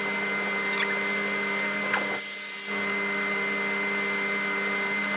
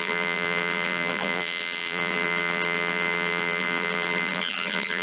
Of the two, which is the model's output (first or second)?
second